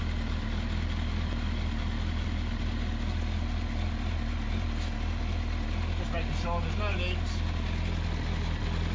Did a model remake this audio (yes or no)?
no